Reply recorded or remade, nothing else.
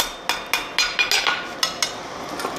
recorded